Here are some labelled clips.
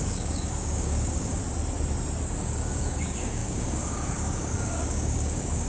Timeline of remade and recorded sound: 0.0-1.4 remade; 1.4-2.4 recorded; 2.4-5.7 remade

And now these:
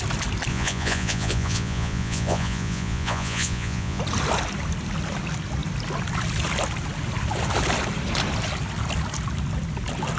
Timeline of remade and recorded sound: 0.0-0.5 recorded; 0.5-4.0 remade; 4.0-10.2 recorded

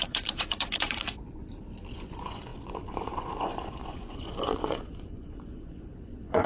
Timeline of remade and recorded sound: 0.0-1.4 remade; 1.4-1.9 recorded; 1.9-6.5 remade

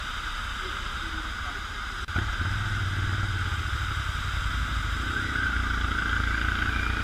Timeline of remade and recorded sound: 0.0-7.0 recorded

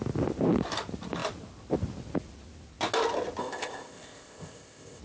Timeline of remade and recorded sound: 0.0-3.4 recorded; 3.4-5.0 remade

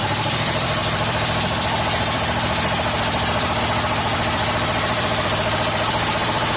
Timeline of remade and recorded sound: 0.0-6.6 remade

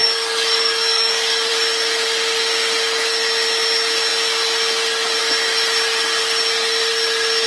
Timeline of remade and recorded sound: 0.0-1.5 remade; 1.5-7.5 recorded